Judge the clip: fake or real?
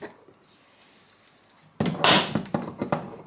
real